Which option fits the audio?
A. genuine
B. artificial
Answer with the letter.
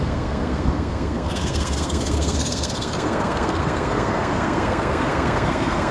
B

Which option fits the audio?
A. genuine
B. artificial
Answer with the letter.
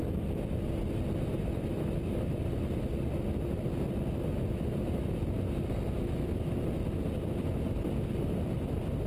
A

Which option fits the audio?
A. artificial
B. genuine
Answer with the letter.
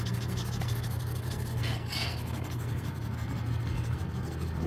A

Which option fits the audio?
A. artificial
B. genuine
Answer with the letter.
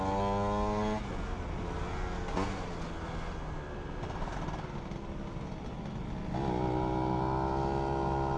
B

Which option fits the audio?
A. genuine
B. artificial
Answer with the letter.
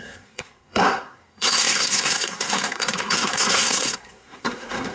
B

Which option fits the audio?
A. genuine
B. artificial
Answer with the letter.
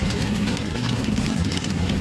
B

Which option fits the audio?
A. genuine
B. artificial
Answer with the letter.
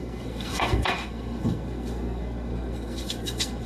B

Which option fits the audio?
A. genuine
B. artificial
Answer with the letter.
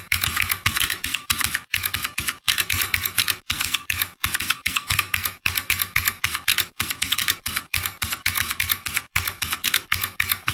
B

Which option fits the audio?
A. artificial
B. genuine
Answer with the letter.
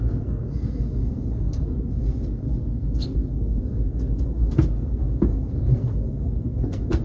A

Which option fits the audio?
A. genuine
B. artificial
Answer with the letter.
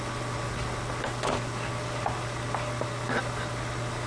A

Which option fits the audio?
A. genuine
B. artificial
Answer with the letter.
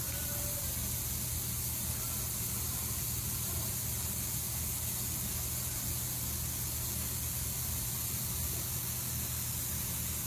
A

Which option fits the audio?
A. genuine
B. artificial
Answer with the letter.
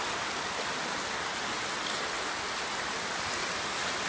A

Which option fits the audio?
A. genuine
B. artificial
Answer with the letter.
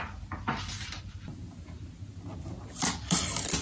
A